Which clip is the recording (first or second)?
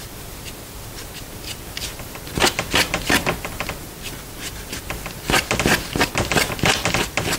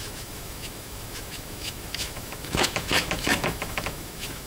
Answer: first